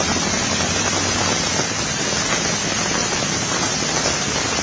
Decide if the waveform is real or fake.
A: real